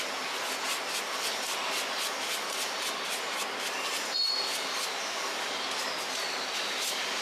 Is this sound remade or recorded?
recorded